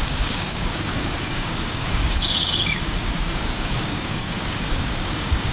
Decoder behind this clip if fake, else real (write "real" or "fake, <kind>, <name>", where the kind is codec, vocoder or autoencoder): fake, codec, DAC